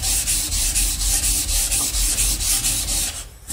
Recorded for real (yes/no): no